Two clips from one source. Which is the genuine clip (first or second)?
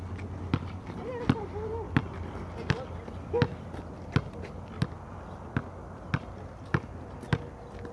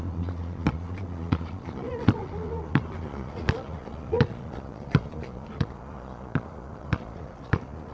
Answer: first